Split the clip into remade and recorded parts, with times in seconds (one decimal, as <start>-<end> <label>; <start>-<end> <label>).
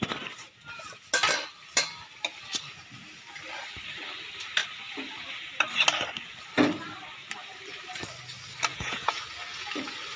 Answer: 0.0-8.7 recorded; 8.7-9.2 remade; 9.2-10.2 recorded